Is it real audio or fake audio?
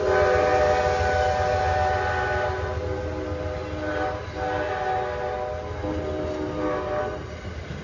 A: real